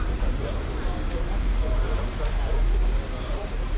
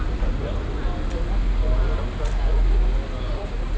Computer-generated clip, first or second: first